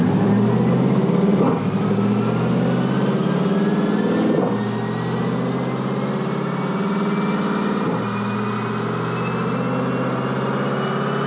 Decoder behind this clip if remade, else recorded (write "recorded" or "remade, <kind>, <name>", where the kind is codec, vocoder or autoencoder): recorded